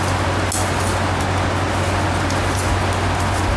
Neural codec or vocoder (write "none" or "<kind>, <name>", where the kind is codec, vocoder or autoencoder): none